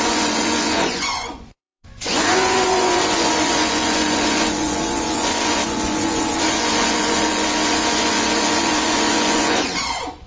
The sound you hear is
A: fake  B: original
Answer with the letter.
A